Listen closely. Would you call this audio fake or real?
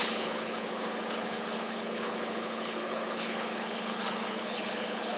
fake